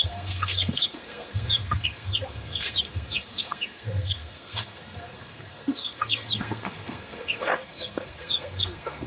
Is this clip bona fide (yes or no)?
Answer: no